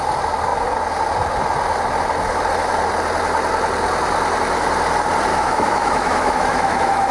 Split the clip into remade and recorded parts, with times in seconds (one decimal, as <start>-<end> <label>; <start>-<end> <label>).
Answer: 0.0-5.3 recorded; 5.3-7.1 remade